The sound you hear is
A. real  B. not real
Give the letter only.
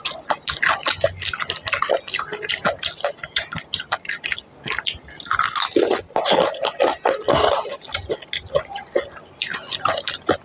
A